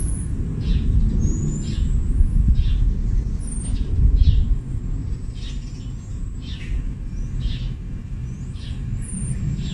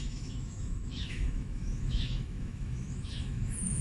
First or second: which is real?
first